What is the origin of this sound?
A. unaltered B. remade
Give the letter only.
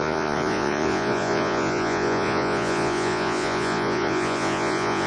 B